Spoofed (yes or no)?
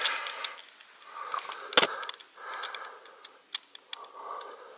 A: no